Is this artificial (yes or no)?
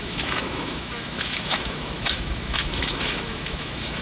yes